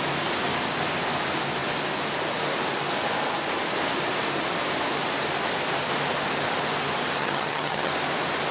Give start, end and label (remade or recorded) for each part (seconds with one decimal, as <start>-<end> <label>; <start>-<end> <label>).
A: 0.0-7.2 recorded; 7.2-7.9 remade; 7.9-8.5 recorded